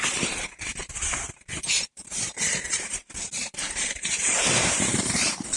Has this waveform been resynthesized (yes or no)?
yes